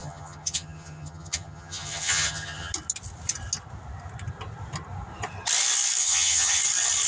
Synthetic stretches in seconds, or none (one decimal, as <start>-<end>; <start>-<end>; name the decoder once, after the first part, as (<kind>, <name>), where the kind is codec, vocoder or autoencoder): 0.0-2.7 (vocoder, HiFi-GAN); 6.0-6.6